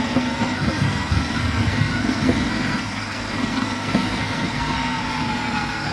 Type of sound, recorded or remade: remade